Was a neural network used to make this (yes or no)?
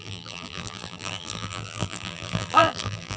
yes